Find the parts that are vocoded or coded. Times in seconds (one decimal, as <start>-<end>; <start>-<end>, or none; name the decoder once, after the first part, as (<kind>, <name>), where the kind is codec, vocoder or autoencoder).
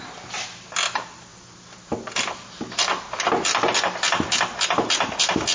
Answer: none